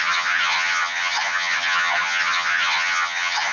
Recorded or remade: remade